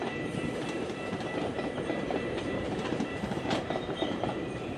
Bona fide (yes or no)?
no